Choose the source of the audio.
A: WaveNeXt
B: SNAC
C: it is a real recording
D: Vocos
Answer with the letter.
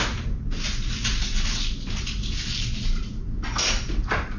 C